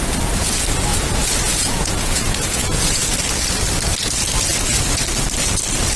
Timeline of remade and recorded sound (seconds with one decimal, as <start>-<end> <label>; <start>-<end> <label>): 0.0-0.9 recorded; 0.9-3.0 remade; 3.0-6.0 recorded